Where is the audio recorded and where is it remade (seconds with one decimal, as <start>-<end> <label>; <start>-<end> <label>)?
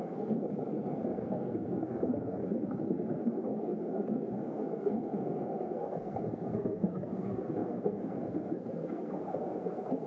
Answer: 0.0-10.1 remade